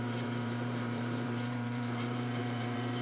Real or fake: fake